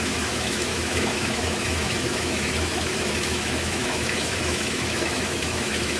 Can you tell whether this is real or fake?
fake